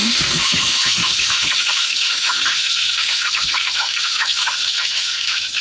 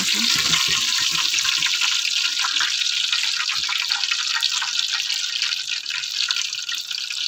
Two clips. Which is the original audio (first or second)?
second